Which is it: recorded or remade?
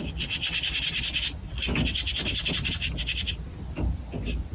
recorded